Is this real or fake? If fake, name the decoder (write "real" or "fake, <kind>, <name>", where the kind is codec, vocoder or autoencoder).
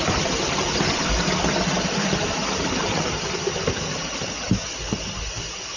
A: real